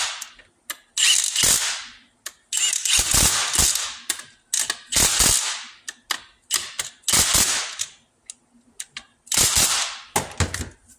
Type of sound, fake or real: real